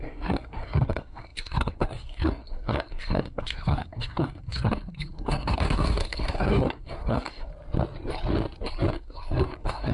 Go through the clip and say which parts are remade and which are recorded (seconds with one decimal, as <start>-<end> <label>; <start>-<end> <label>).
0.0-7.5 remade; 7.5-8.9 recorded; 8.9-9.9 remade

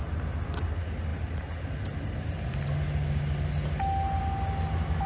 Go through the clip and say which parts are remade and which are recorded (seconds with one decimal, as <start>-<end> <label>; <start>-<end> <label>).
0.0-5.1 recorded

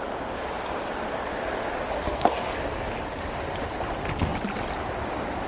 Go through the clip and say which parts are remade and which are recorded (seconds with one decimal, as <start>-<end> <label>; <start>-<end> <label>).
0.0-2.0 recorded; 2.0-2.5 remade; 2.5-5.5 recorded

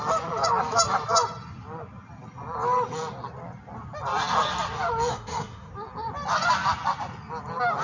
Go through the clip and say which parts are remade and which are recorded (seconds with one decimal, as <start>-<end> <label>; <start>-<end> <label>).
0.0-5.1 recorded; 5.1-5.7 remade; 5.7-7.8 recorded

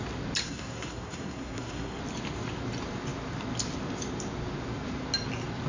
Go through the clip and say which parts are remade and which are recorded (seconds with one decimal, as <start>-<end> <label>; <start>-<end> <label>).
0.0-0.4 recorded; 0.4-2.0 remade; 2.0-5.7 recorded

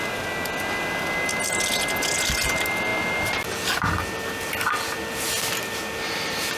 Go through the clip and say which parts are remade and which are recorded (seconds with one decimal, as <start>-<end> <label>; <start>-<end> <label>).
0.0-6.6 recorded